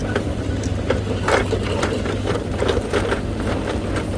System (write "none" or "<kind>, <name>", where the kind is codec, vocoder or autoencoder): none